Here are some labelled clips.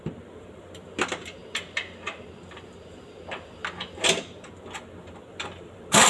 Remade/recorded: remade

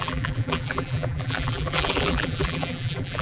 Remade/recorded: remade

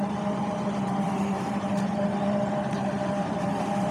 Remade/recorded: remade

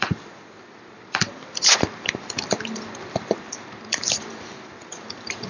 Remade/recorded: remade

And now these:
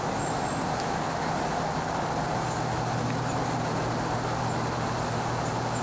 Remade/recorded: recorded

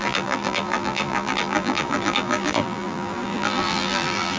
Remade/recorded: remade